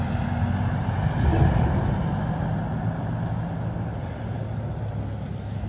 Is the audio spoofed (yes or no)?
no